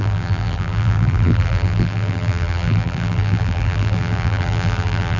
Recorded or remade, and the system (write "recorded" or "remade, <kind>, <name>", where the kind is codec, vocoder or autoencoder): remade, vocoder, BigVGAN v2